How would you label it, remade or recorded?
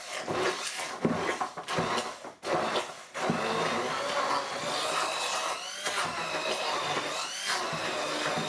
recorded